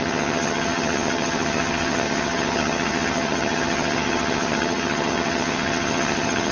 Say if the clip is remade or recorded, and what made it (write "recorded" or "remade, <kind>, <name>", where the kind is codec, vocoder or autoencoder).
remade, vocoder, HiFi-GAN